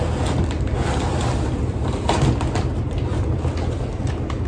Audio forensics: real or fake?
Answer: real